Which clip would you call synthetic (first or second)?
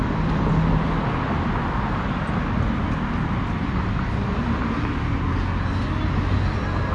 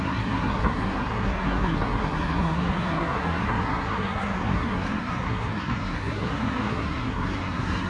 second